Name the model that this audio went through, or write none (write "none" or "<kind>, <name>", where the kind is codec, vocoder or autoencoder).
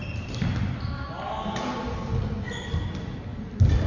none